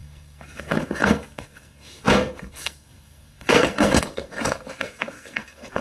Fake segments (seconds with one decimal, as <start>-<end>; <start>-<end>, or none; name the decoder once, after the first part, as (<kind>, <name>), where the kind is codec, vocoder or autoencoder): 0.0-5.8 (codec, SNAC)

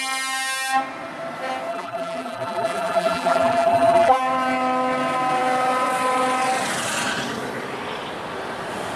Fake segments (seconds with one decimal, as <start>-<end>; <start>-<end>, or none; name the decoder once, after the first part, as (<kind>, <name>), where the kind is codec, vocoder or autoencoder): 1.7-4.2 (vocoder, BigVGAN v2)

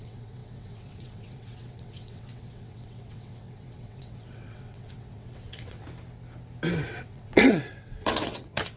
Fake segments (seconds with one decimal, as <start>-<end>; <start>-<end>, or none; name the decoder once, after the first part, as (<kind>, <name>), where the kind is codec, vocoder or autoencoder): 0.0-5.8 (vocoder, WaveNeXt); 6.9-8.8

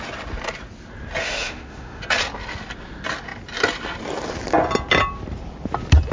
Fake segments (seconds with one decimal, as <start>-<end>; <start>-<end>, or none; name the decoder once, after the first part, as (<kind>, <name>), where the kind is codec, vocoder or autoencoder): 1.2-2.0 (autoencoder, DAC-VAE)

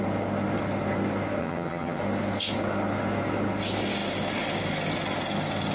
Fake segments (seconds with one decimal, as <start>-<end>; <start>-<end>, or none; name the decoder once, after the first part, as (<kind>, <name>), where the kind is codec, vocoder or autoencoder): 1.4-2.0 (vocoder, HiFi-GAN)